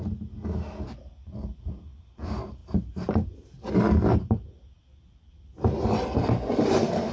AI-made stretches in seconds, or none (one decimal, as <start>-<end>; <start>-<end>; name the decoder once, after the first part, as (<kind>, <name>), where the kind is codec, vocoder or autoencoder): none